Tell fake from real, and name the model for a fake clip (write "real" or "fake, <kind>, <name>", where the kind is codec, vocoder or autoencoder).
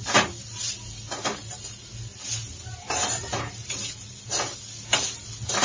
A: real